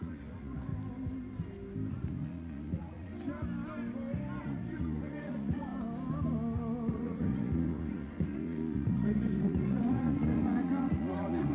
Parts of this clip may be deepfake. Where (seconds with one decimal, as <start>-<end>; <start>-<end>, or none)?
0.0-0.7; 1.9-3.1; 4.4-5.7; 6.9-11.5